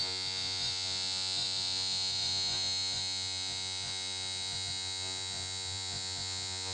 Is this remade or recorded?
remade